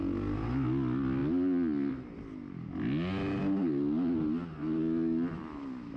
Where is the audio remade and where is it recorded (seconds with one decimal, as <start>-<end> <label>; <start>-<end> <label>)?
0.0-6.0 recorded